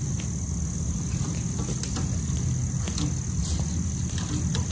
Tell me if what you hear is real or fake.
real